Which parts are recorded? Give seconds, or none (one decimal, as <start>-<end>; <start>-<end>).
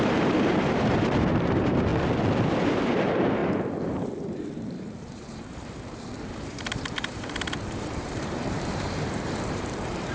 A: 1.9-2.6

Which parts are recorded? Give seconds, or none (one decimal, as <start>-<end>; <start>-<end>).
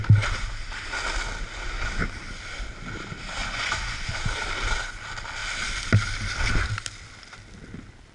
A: 0.0-3.4; 4.2-8.1